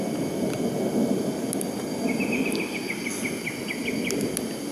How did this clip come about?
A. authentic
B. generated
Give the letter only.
A